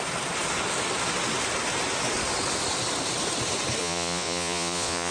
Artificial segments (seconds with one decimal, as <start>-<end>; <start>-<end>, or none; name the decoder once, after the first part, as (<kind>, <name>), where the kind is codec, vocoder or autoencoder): 3.8-5.1 (vocoder, Vocos)